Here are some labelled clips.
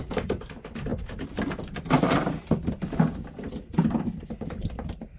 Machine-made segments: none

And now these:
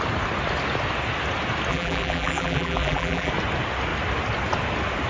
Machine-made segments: 1.7-3.3 (vocoder, BigVGAN v2)

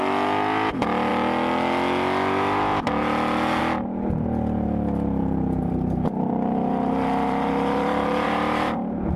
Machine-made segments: 5.2-9.2 (vocoder, BigVGAN v2)

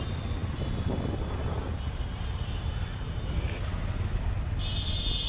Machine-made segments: none